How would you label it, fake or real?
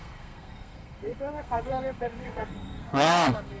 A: fake